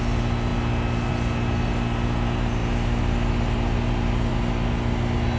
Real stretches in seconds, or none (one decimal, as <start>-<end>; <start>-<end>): 0.0-5.4